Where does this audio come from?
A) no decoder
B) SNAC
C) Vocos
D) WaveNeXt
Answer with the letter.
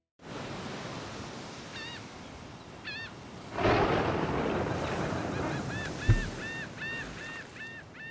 A